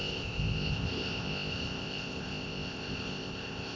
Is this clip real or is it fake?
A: fake